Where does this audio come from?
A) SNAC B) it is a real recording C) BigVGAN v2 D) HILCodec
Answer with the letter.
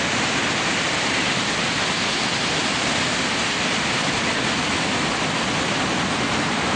B